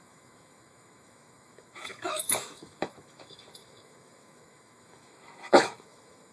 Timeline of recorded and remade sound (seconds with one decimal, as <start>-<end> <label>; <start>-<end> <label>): 0.0-6.3 remade